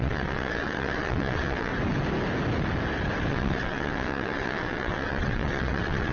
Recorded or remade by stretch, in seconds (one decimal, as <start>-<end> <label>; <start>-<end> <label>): 0.0-1.7 remade; 1.7-3.3 recorded; 3.3-6.1 remade